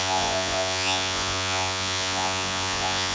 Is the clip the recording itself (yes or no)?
no